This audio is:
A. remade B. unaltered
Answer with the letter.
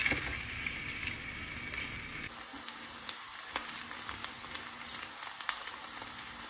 B